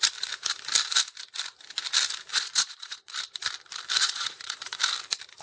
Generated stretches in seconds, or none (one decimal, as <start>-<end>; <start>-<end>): 2.3-3.1; 4.0-4.8